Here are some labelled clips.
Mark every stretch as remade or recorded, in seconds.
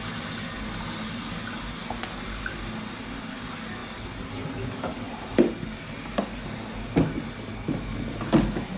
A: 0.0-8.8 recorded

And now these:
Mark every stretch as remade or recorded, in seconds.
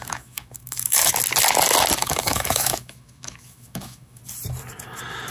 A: 0.0-1.1 remade; 1.1-2.0 recorded; 2.0-4.2 remade; 4.2-5.3 recorded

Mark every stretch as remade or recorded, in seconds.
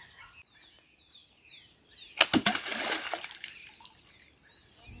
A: 0.0-5.0 recorded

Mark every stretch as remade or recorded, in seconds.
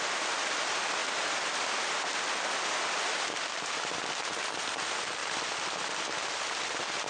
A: 0.0-7.1 recorded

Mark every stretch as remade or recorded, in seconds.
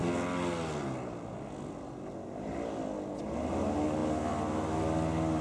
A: 0.0-5.4 recorded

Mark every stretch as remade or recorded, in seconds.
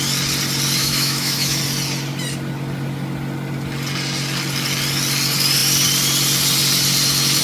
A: 0.0-0.8 recorded; 0.8-1.6 remade; 1.6-7.4 recorded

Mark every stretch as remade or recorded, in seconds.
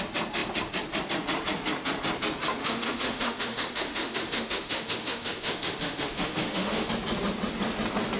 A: 0.0-2.6 recorded; 2.6-6.9 remade; 6.9-8.2 recorded